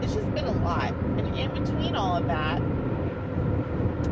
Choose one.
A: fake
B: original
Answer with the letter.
B